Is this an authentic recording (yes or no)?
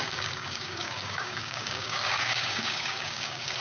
no